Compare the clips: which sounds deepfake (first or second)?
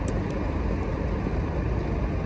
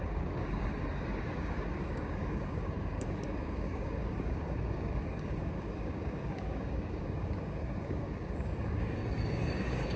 second